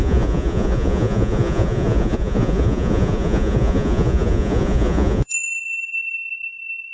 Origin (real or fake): fake